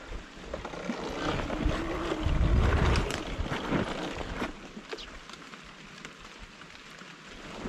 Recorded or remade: recorded